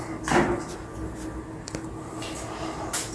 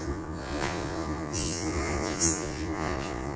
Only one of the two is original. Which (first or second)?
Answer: first